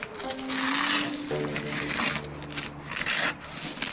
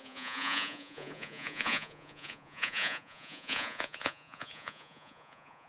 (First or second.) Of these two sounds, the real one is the first